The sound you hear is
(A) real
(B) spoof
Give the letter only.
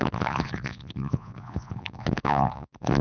B